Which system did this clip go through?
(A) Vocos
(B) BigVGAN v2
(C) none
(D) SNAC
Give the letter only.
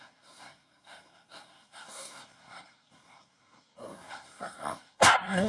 D